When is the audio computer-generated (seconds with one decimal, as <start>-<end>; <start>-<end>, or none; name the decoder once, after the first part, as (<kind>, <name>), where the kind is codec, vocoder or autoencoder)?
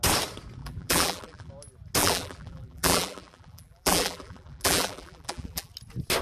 0.6-1.5 (vocoder, BigVGAN v2); 2.0-5.7